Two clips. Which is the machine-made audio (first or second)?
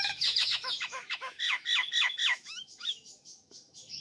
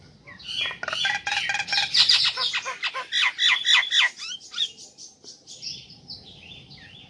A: first